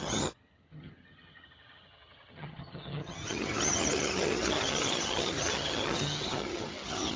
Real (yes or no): no